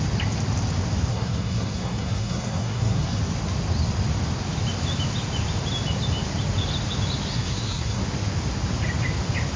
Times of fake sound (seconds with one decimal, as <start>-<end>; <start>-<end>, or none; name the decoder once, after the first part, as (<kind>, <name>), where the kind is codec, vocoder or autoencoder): 1.1-3.2 (codec, SNAC); 7.3-8.0